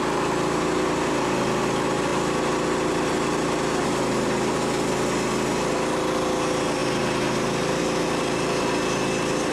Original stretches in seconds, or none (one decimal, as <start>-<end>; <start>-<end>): 0.0-9.5

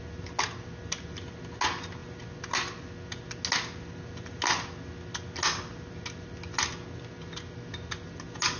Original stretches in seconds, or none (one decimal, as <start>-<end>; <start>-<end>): 0.0-8.6

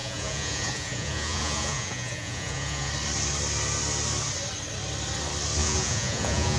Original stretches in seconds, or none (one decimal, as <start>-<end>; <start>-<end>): 2.9-5.6

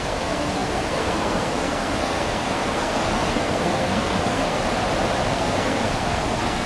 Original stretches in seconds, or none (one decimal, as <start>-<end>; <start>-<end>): 4.6-5.3